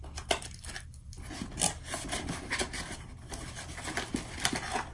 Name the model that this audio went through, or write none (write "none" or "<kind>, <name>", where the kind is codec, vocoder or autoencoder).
none